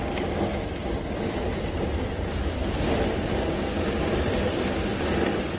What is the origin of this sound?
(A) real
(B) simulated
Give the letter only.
A